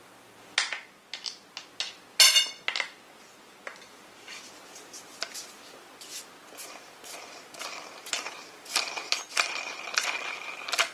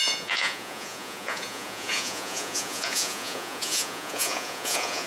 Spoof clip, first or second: second